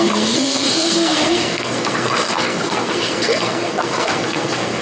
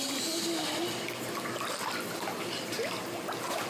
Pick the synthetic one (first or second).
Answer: first